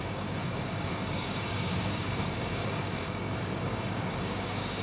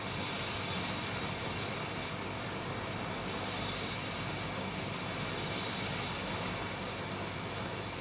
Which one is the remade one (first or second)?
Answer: first